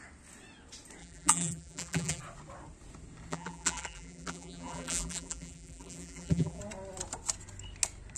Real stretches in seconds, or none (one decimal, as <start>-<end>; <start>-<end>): 0.0-1.0; 2.2-3.3; 6.6-8.2